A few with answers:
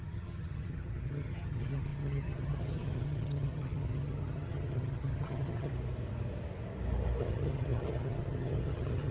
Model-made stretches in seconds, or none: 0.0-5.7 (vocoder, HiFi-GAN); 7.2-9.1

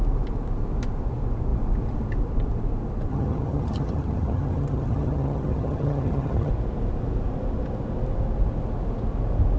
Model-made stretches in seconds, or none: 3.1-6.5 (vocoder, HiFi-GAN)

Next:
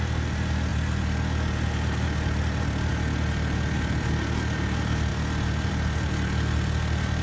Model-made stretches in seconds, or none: none

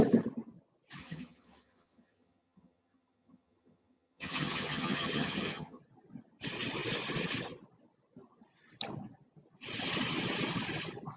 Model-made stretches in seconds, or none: 1.0-5.8 (vocoder, HiFi-GAN)

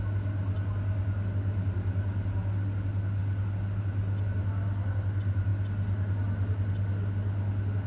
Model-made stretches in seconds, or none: none

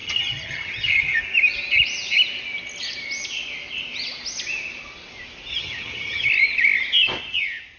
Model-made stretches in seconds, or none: 0.0-1.2 (vocoder, HiFi-GAN); 5.5-6.3

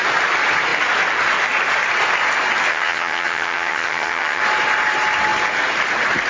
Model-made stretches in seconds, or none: 2.7-4.4 (vocoder, HiFi-GAN)